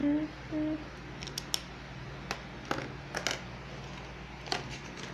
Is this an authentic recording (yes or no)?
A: yes